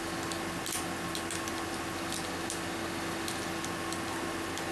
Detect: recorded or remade recorded